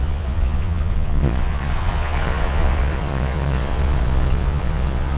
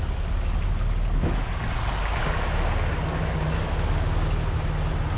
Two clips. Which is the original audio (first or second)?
second